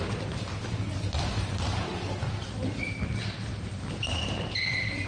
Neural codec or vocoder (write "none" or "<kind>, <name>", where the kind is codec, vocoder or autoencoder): none